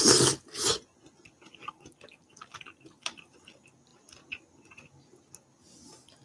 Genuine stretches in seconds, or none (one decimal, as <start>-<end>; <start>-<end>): 0.0-6.2